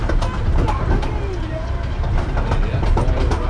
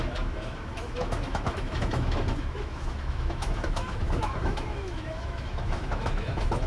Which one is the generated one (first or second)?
second